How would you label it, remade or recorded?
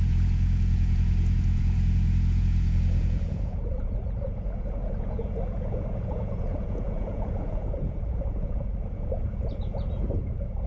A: remade